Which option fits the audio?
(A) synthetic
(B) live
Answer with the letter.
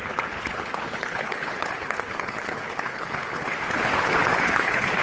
A